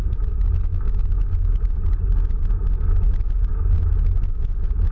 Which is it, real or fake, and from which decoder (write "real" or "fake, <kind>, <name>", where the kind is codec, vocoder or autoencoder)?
real